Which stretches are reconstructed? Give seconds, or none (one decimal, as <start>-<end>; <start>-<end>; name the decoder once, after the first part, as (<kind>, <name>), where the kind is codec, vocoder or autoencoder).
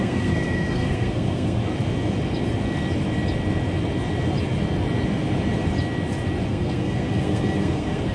0.0-1.6 (codec, SNAC); 6.5-8.1